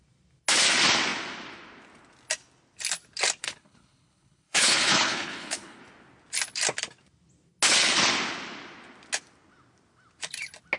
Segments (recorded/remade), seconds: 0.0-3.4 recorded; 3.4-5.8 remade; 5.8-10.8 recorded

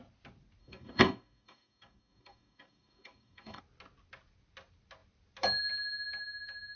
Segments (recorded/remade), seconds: 0.0-0.6 recorded; 0.6-3.6 remade; 3.6-6.8 recorded